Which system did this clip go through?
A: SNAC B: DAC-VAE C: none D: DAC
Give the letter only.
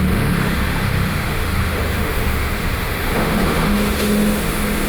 B